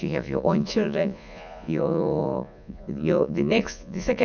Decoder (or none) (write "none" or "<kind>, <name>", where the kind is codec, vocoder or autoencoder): vocoder, Vocos